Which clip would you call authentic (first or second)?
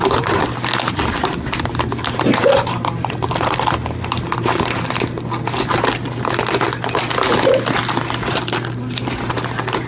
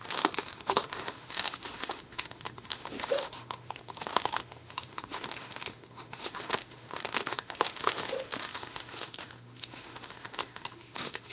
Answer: first